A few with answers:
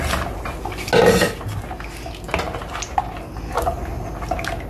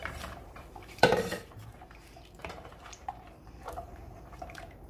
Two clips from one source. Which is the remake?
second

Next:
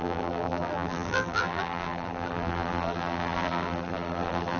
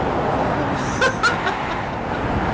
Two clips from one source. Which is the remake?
first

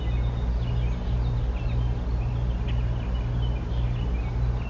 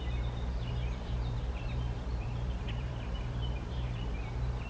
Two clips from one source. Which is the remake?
second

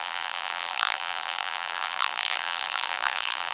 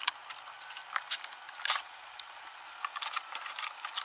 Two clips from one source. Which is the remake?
first